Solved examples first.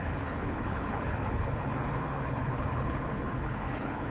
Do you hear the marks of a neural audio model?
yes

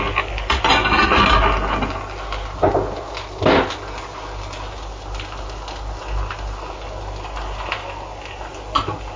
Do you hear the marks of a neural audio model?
no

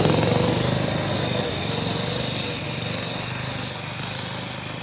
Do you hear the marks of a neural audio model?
no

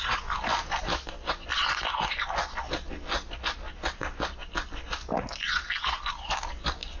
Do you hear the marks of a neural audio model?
no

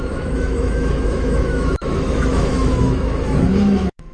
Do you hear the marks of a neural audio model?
yes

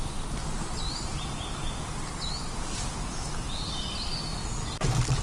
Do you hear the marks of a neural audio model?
no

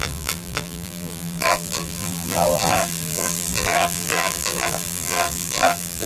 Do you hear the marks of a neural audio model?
yes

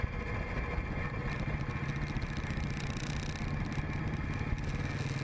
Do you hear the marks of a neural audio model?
no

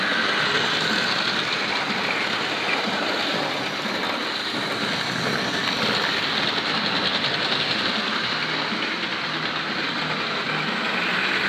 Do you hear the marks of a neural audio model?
no